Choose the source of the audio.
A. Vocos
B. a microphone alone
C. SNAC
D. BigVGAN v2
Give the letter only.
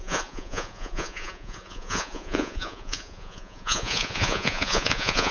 A